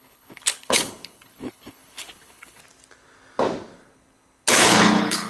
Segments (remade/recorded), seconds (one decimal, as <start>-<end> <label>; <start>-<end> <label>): 0.0-2.6 remade; 2.6-4.5 recorded; 4.5-5.3 remade